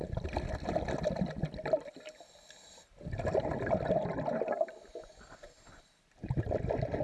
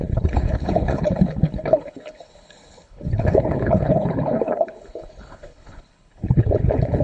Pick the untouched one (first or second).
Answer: first